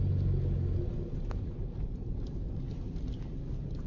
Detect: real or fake real